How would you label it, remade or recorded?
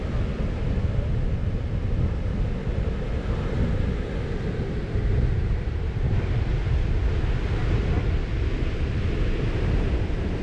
recorded